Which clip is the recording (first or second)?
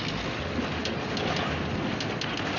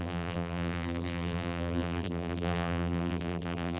first